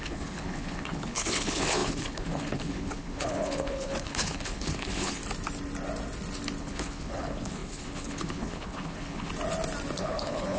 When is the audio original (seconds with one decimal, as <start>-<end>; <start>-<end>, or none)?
5.2-6.6; 9.3-10.0